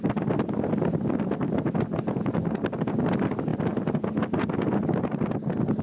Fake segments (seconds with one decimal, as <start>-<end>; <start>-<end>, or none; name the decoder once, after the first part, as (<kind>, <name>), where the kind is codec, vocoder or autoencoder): none